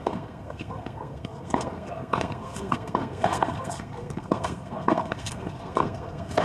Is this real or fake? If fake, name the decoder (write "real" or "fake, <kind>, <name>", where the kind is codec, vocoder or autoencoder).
fake, codec, SNAC